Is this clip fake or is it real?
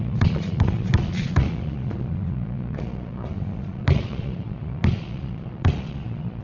fake